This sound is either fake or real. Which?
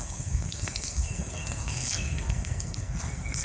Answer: fake